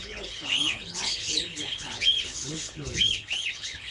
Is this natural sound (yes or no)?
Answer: no